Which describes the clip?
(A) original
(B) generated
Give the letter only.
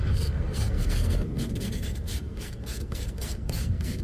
B